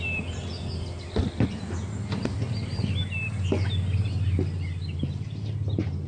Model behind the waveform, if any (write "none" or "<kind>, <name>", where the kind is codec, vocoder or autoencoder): none